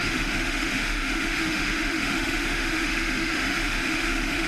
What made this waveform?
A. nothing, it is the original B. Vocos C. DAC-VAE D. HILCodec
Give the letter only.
C